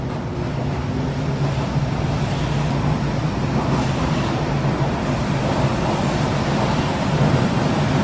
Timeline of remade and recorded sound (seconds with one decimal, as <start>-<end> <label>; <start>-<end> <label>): 0.0-3.2 recorded; 3.2-5.3 remade; 5.3-8.0 recorded